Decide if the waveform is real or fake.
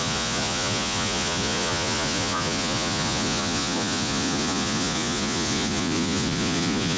fake